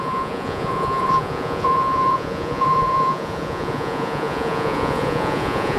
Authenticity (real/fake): fake